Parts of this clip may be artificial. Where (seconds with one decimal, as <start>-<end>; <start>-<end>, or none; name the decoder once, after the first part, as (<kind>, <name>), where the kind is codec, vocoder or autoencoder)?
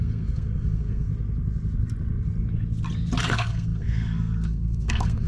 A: 0.0-1.1 (codec, SNAC); 3.2-5.3